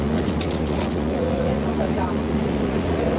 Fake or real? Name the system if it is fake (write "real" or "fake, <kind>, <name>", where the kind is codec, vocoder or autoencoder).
fake, vocoder, Vocos